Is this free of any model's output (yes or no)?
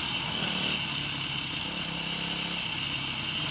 yes